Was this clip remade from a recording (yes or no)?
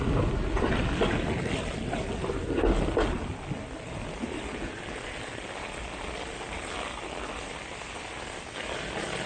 no